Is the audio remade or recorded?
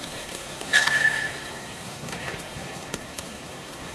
remade